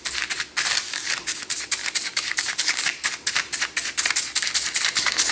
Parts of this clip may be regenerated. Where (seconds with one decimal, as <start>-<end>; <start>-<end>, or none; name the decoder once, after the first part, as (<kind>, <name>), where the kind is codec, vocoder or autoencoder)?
0.8-1.4 (codec, DAC); 1.8-3.1